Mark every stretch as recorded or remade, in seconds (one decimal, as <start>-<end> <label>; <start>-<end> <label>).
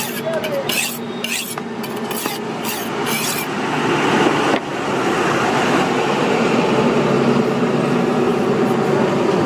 0.0-9.5 recorded